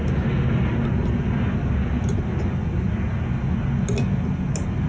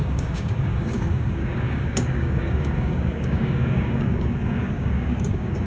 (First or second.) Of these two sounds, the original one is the first